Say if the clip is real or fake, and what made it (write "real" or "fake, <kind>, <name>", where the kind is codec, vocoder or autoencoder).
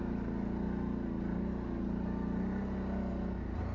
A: real